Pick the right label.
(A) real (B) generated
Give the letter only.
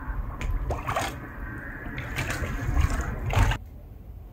A